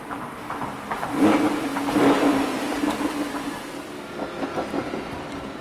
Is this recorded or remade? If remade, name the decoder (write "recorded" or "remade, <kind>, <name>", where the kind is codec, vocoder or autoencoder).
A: recorded